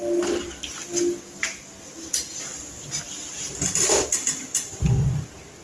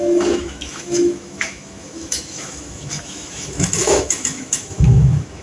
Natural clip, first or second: first